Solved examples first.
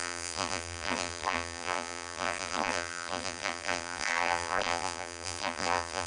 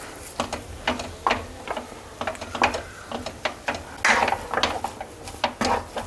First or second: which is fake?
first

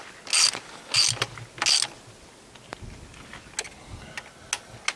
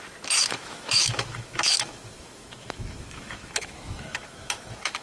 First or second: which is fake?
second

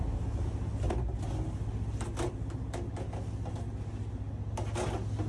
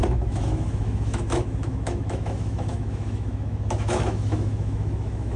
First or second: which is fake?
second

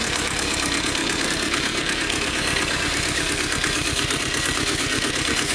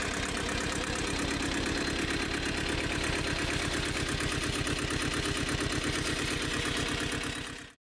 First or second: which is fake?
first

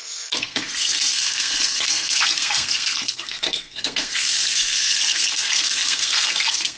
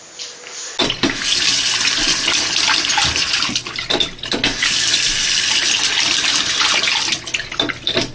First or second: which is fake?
first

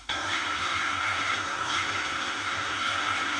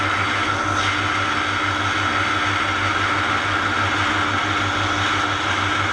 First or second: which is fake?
first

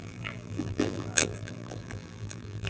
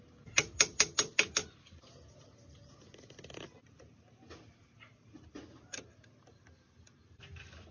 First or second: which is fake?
first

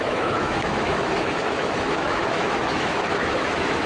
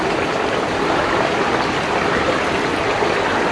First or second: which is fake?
first